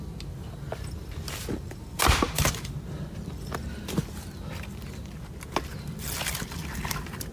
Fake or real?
real